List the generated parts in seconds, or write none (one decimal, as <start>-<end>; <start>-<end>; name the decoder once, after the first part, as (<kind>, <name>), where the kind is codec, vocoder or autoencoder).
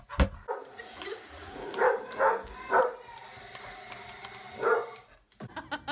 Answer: 0.6-1.7 (vocoder, Vocos)